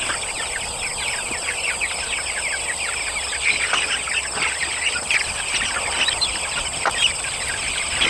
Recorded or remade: recorded